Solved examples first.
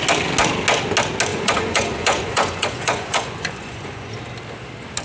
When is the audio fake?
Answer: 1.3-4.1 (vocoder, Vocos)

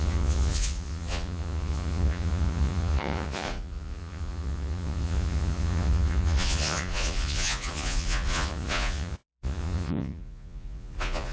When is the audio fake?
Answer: 0.0-11.3 (vocoder, Vocos)

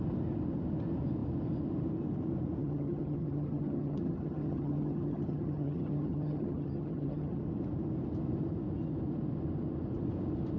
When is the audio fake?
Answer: 2.6-7.4 (vocoder, HiFi-GAN)

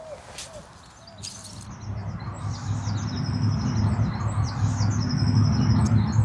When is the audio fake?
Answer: none

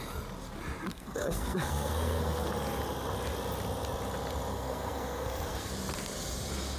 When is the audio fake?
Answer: 0.9-2.5 (codec, SNAC); 4.5-5.7

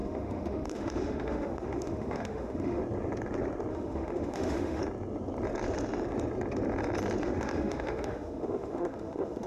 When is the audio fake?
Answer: 0.0-2.8 (autoencoder, DAC-VAE); 3.7-4.8; 7.2-9.5